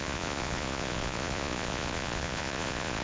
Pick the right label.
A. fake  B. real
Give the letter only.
A